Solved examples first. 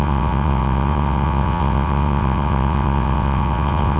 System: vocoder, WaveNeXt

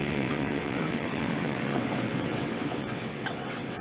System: vocoder, WaveNeXt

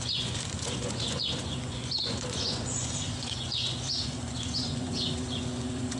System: vocoder, Vocos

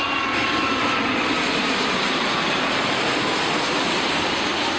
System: none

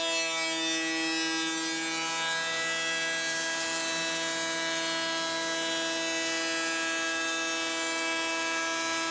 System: none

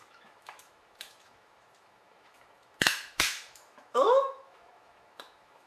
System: autoencoder, DAC-VAE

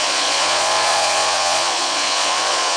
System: vocoder, Vocos